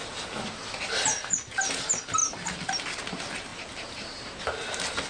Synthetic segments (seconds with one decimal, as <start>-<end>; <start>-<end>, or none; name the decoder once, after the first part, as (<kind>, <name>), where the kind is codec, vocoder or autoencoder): none